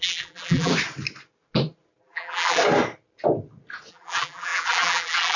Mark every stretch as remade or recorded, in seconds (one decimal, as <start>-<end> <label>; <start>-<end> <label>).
0.0-0.7 remade; 0.7-2.0 recorded; 2.0-2.6 remade; 2.6-3.9 recorded; 3.9-5.4 remade